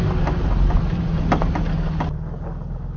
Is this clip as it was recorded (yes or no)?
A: yes